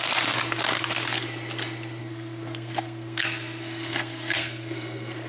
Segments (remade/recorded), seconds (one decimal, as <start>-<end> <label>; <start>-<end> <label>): 0.0-2.0 recorded; 2.0-5.3 remade